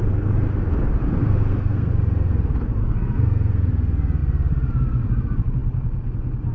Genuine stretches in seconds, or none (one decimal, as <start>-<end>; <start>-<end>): 0.0-1.2; 1.9-2.8; 3.7-6.5